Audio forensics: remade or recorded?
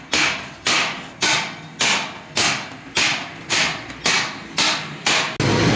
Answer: recorded